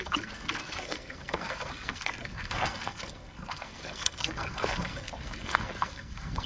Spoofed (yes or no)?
yes